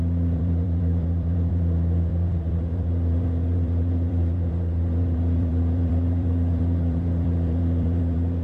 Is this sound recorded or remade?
remade